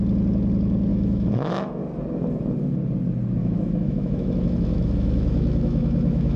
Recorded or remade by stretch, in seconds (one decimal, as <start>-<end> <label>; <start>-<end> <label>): 0.0-0.9 recorded; 0.9-1.8 remade; 1.8-3.4 recorded; 3.4-6.4 remade